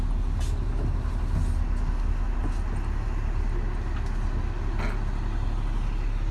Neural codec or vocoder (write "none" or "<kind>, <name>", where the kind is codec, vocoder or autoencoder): none